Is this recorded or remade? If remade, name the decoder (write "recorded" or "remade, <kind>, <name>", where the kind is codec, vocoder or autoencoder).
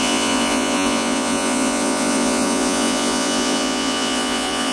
remade, vocoder, Vocos